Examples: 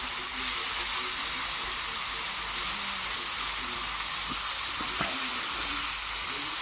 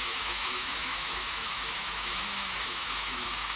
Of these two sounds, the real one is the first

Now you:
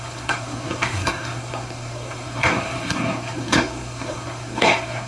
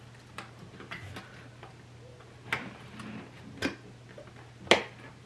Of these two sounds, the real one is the second